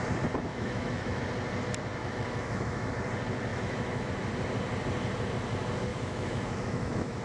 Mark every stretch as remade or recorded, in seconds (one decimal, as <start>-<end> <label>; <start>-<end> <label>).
0.0-0.5 recorded; 0.5-1.2 remade; 1.2-2.0 recorded; 2.0-2.9 remade; 2.9-3.5 recorded; 3.5-4.1 remade; 4.1-5.9 recorded; 5.9-7.2 remade